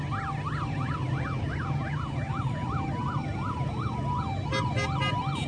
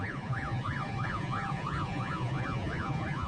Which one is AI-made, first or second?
second